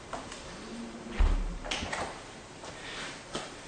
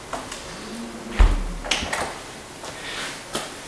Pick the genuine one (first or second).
second